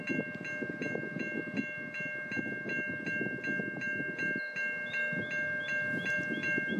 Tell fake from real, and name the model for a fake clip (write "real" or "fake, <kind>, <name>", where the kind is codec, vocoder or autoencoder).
real